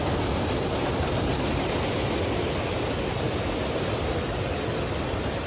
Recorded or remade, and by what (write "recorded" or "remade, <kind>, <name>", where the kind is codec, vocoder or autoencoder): recorded